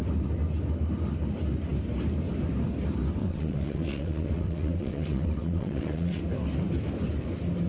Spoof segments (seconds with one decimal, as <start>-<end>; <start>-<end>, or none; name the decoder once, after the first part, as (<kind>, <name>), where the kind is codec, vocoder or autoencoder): 3.2-6.2 (vocoder, WaveNeXt)